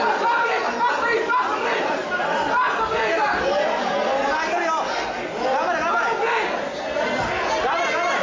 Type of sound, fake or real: real